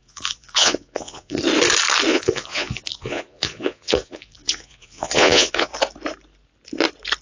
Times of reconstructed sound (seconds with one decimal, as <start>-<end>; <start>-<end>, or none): 0.0-1.4; 2.1-5.7